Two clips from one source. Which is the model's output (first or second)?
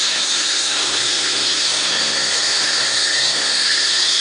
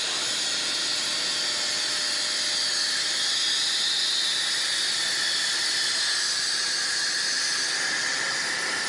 first